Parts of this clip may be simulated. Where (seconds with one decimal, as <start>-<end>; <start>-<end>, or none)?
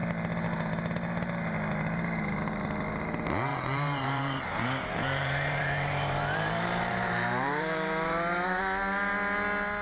3.5-8.6